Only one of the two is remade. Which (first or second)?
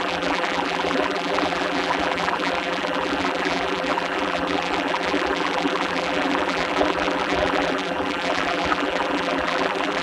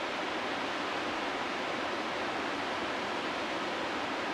first